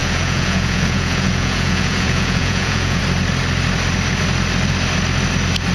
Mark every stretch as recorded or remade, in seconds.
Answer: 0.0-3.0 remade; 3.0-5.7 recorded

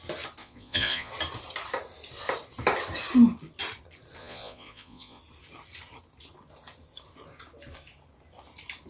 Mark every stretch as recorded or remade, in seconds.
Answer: 0.0-0.4 recorded; 0.4-1.1 remade; 1.1-4.2 recorded; 4.2-5.2 remade; 5.2-8.9 recorded

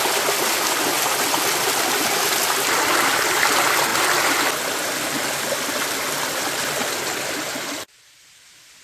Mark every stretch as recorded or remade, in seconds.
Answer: 0.0-8.8 recorded

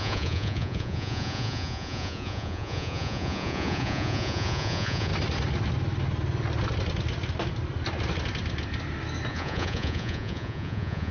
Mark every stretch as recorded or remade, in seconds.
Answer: 0.0-5.1 remade; 5.1-9.3 recorded; 9.3-11.1 remade

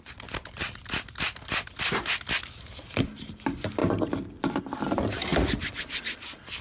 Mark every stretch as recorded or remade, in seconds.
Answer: 0.0-6.6 recorded

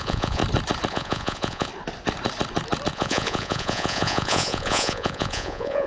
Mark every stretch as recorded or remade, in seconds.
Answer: 0.0-0.4 remade; 0.4-0.9 recorded; 0.9-1.7 remade; 1.7-2.9 recorded; 2.9-5.9 remade

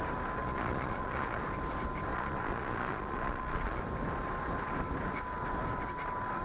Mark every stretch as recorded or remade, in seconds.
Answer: 0.0-0.4 recorded; 0.4-1.4 remade; 1.4-2.1 recorded; 2.1-3.8 remade; 3.8-6.4 recorded